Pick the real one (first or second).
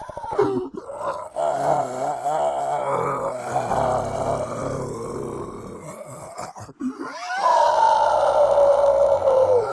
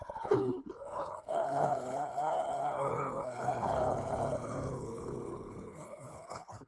first